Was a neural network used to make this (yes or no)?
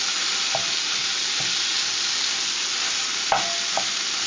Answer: no